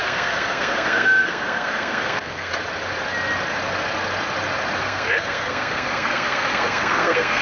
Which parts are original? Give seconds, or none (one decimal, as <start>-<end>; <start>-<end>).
2.5-4.8